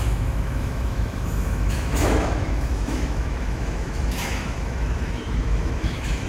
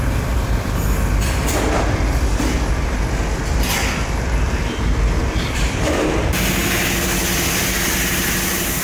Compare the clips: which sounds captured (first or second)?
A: second